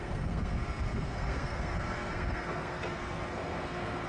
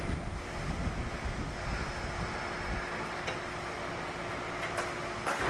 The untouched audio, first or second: second